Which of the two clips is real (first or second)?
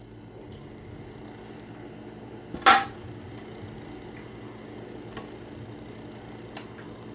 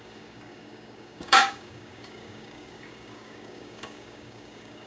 first